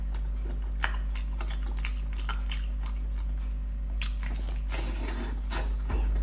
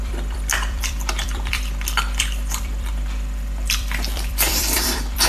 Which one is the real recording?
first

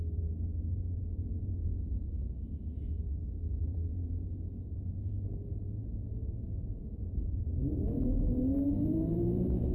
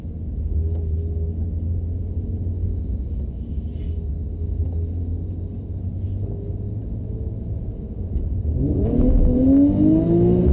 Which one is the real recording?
second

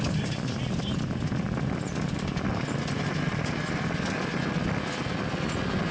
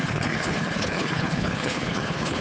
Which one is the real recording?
first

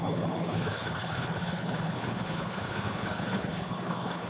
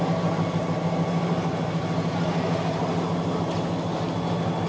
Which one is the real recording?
second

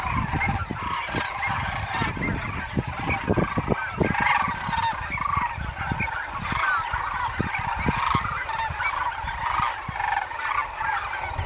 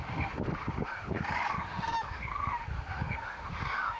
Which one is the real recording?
first